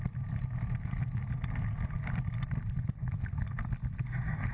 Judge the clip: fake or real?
real